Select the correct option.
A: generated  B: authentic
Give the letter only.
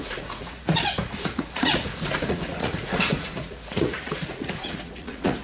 A